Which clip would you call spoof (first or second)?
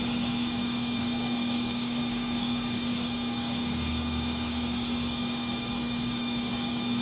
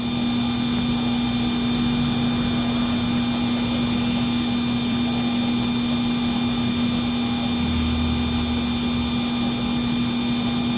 first